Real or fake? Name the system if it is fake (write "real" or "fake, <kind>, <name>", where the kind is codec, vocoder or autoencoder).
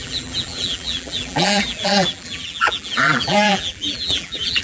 fake, vocoder, BigVGAN v2